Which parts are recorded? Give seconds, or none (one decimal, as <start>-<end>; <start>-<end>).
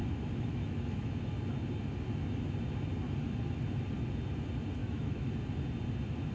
1.3-4.8; 5.3-6.3